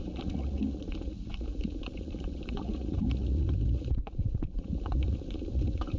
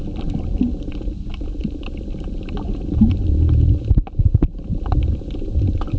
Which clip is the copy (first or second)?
first